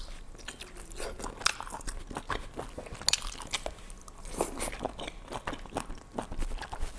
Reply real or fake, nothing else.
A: real